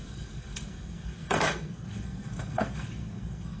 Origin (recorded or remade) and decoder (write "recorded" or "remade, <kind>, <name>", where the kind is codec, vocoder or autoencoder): remade, codec, SNAC